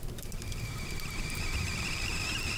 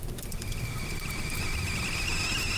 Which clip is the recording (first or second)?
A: second